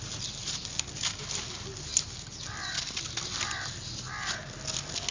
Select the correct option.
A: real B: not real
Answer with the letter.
A